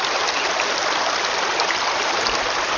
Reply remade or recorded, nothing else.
recorded